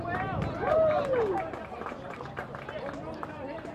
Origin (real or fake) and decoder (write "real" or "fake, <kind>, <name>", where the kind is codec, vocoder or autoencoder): fake, vocoder, BigVGAN v2